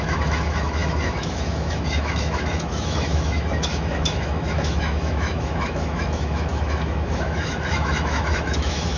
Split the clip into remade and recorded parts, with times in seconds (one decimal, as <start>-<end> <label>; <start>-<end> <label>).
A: 0.0-9.0 remade